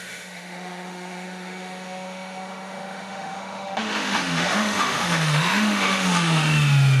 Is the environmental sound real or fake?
fake